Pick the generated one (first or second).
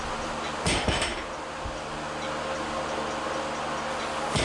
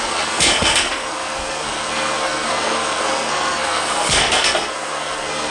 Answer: second